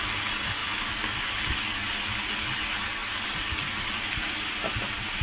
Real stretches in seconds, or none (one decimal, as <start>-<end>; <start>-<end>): 0.0-0.6; 1.2-3.0